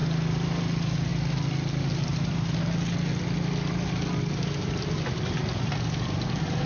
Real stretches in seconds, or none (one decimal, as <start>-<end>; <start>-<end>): 0.0-6.7